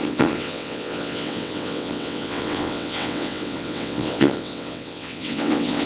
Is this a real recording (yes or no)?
no